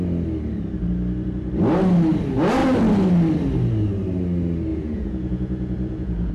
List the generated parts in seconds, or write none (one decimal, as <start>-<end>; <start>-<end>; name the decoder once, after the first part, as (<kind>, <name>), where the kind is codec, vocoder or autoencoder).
4.7-6.3 (vocoder, Vocos)